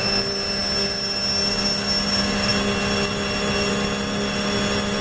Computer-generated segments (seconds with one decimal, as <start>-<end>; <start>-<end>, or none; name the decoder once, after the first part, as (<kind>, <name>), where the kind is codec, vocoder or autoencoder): none